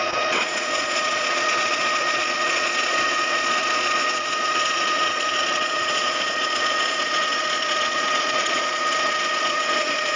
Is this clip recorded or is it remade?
remade